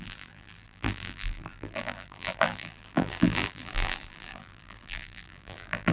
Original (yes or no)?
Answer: no